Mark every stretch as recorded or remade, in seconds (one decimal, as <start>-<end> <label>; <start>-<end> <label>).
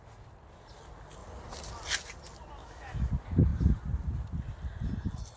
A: 0.0-2.6 recorded; 2.6-3.1 remade; 3.1-5.4 recorded